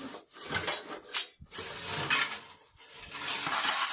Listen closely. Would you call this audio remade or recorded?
recorded